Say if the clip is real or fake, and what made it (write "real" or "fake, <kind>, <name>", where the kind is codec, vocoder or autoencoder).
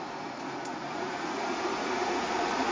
fake, vocoder, Vocos